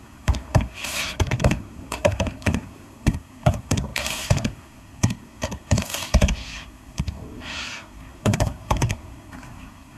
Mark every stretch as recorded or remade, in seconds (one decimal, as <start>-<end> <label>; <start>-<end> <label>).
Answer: 0.0-10.0 remade